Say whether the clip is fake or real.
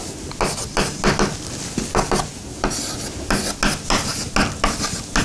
real